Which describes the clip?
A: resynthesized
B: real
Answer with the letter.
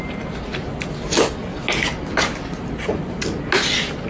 B